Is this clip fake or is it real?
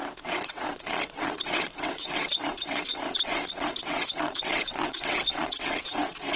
fake